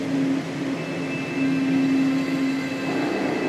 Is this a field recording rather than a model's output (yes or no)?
yes